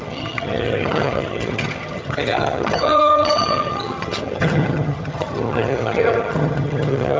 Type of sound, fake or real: fake